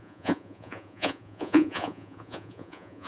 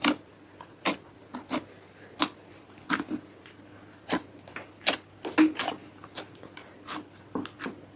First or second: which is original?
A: second